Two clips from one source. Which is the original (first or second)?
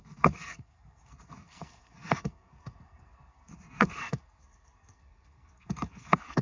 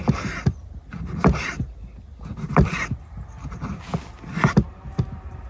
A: second